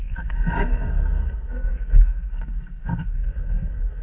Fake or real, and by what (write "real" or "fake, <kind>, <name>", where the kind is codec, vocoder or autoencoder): fake, codec, SNAC